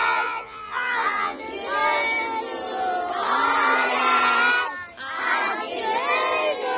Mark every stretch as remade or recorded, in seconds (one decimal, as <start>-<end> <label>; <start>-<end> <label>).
0.0-1.4 remade; 1.4-6.8 recorded